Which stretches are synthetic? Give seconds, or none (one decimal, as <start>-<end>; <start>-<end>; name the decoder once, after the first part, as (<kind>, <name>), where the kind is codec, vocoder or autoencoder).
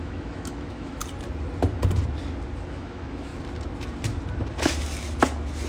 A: 0.0-1.0 (autoencoder, DAC-VAE); 2.7-3.3